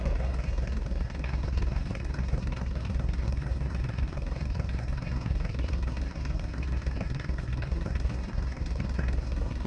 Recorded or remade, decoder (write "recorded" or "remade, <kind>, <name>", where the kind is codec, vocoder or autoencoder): remade, codec, SNAC